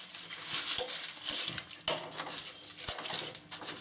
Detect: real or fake real